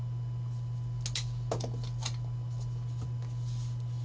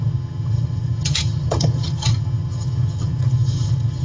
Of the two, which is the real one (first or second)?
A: first